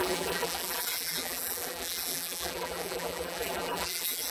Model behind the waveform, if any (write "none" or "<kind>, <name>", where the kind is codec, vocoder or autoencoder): vocoder, BigVGAN v2